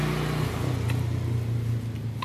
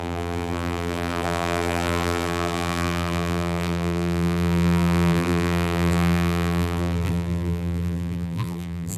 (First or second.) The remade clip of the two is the second